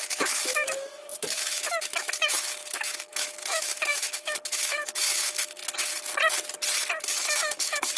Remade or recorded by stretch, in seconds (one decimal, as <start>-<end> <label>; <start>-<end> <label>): 0.0-5.6 remade; 5.6-7.2 recorded; 7.2-8.0 remade